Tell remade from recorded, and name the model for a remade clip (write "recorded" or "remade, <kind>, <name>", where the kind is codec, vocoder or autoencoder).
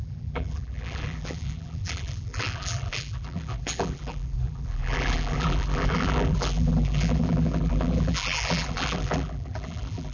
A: remade, vocoder, BigVGAN v2